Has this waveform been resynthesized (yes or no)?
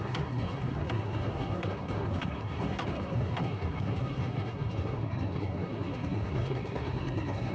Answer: yes